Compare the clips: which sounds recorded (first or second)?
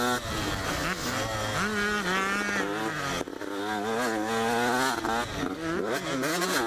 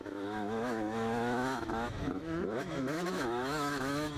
first